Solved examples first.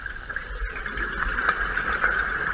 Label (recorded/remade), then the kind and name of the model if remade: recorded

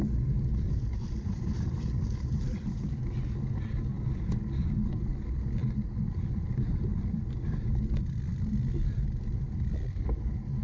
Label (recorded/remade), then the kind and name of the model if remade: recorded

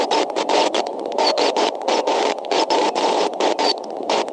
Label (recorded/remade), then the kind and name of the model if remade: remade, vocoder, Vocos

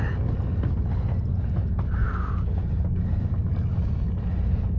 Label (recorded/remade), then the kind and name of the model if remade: recorded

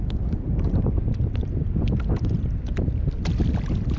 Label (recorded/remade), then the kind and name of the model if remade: recorded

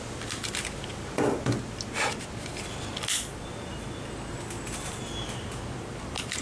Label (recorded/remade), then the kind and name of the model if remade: recorded